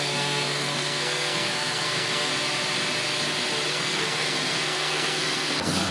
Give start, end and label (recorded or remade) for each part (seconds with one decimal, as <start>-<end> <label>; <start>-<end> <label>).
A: 0.0-2.3 remade; 2.3-3.7 recorded; 3.7-5.9 remade